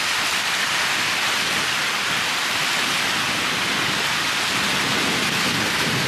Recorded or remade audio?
recorded